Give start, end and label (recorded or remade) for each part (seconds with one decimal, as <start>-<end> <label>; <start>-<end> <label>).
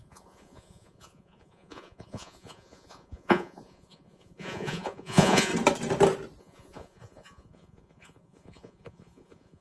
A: 0.0-5.5 remade; 5.5-6.4 recorded; 6.4-9.6 remade